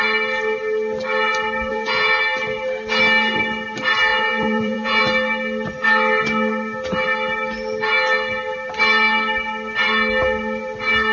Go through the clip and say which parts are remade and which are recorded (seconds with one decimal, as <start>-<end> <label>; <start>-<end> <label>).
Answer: 0.0-1.7 recorded; 1.7-2.2 remade; 2.2-4.1 recorded; 4.1-5.0 remade; 5.0-11.1 recorded

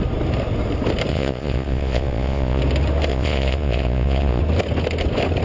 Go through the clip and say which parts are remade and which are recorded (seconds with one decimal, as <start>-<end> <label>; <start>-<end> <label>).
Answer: 0.0-1.1 recorded; 1.1-2.6 remade; 2.6-3.1 recorded; 3.1-4.4 remade; 4.4-5.4 recorded